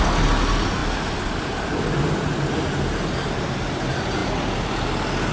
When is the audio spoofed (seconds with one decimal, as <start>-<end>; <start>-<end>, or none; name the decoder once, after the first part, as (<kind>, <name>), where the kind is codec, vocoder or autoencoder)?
none